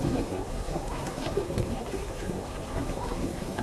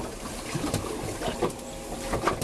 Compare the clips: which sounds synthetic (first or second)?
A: first